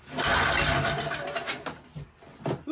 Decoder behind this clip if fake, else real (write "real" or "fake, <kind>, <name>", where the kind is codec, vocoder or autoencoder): real